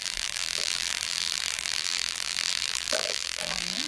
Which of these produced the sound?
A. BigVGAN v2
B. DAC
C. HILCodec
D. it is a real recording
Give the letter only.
A